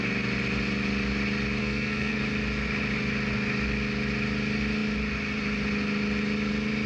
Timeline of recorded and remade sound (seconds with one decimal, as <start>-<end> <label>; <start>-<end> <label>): 0.0-1.6 recorded; 1.6-2.2 remade; 2.2-6.9 recorded